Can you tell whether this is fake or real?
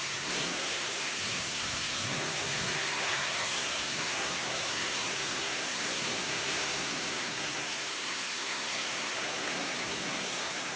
fake